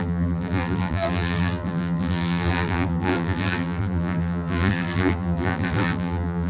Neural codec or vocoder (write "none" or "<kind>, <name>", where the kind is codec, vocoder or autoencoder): vocoder, BigVGAN v2